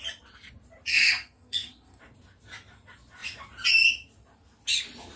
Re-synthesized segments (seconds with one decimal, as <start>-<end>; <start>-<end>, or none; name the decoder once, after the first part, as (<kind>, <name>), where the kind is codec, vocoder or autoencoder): 0.9-2.0 (codec, SNAC)